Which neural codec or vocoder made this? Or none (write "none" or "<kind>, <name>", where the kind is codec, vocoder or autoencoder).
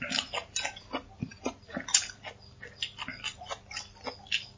none